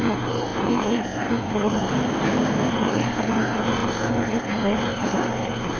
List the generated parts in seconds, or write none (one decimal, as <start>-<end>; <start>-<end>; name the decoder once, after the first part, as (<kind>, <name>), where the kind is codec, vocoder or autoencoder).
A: 0.0-1.9 (codec, SNAC); 2.7-5.8